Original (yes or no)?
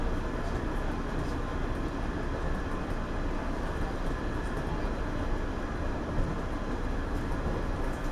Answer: yes